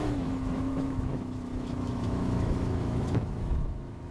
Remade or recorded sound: remade